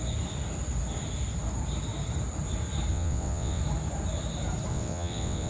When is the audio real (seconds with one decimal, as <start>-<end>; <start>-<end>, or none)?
0.0-2.9; 3.6-4.7

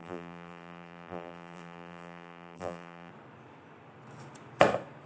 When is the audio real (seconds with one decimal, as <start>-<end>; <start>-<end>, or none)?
3.1-5.1

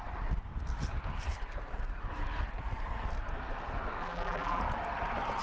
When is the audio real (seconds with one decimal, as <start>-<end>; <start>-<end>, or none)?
0.0-4.0; 4.6-5.4

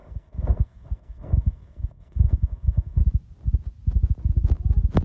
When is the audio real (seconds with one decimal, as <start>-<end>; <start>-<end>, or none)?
3.0-5.0